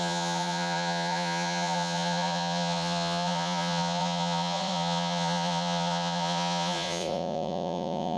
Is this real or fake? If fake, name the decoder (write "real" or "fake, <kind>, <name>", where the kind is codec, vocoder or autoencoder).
fake, vocoder, Vocos